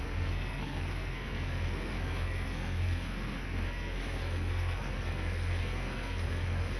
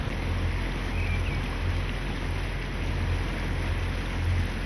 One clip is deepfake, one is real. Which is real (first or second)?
second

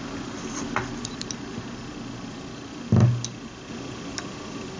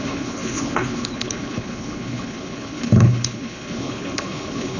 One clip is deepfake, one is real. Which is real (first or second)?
first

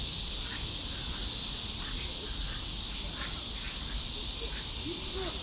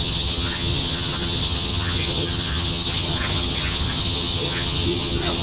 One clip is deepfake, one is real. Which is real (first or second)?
first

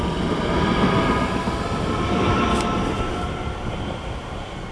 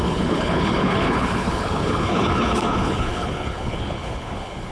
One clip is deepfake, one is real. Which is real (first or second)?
first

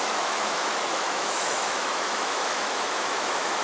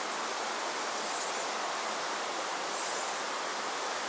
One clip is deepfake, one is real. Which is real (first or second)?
second